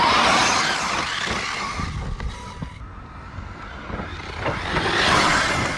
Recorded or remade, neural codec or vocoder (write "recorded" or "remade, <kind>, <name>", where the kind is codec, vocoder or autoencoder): recorded